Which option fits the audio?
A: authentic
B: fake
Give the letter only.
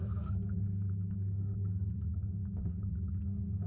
B